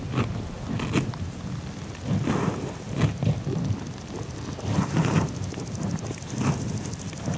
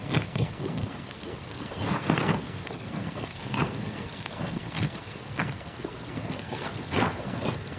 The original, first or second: first